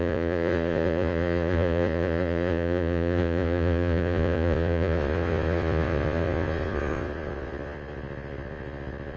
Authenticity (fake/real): fake